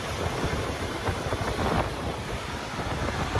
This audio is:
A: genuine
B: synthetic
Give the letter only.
A